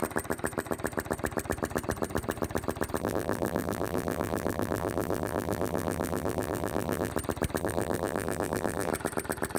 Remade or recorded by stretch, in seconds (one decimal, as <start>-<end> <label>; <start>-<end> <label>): 0.0-3.0 recorded; 3.0-7.1 remade; 7.1-7.6 recorded; 7.6-8.9 remade; 8.9-9.6 recorded